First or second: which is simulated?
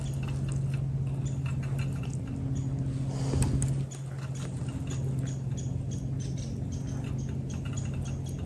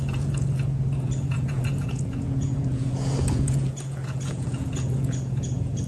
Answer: second